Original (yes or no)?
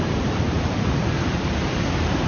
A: no